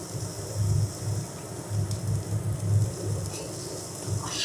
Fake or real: real